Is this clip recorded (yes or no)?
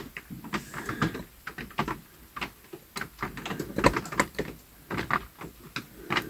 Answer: yes